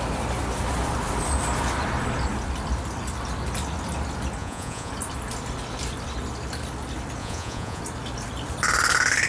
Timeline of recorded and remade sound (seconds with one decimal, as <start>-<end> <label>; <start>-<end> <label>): 0.0-4.4 recorded; 4.4-4.9 remade; 4.9-7.2 recorded; 7.2-7.8 remade; 7.8-9.3 recorded